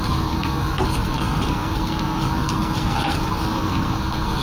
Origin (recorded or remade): remade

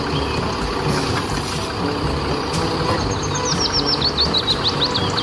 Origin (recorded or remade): recorded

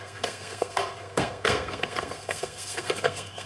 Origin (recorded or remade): remade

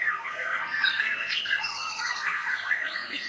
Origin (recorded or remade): remade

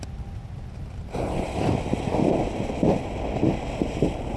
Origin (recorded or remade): recorded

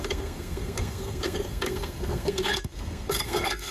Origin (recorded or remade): remade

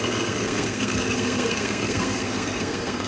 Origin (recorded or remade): remade